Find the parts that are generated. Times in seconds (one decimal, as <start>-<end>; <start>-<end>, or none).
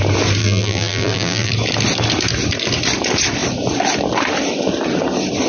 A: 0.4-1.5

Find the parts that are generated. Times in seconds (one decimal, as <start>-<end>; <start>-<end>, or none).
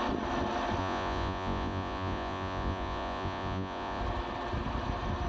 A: 0.8-4.0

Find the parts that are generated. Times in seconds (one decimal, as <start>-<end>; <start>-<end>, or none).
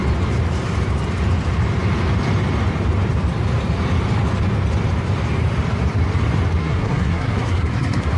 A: 6.6-8.2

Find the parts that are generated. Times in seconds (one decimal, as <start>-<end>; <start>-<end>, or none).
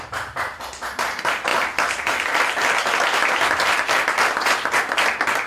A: none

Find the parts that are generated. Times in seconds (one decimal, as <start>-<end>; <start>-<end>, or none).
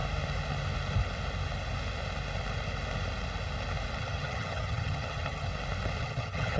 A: 4.0-5.5; 6.0-6.6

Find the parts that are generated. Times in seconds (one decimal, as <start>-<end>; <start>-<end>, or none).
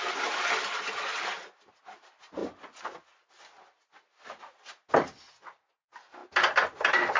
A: none